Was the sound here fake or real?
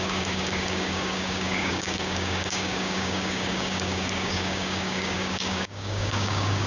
fake